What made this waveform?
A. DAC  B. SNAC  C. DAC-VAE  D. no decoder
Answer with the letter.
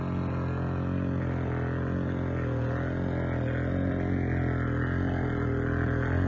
D